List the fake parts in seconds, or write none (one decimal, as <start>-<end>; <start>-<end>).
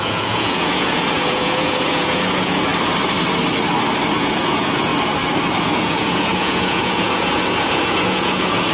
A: 0.0-2.7; 4.2-4.9; 5.6-8.7